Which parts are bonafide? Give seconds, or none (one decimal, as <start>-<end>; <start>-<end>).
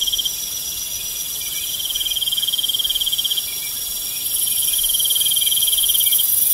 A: 0.0-6.5